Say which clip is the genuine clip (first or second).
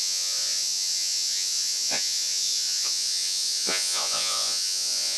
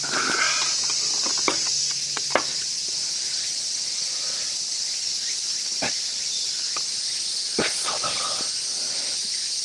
second